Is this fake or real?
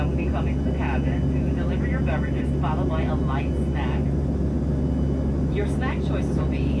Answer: real